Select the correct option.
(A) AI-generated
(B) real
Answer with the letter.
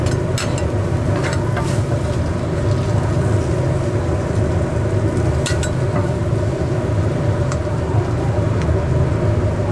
B